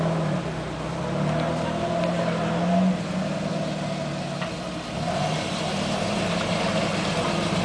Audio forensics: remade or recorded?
recorded